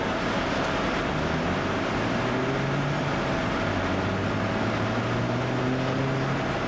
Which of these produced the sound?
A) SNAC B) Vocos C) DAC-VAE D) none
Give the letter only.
D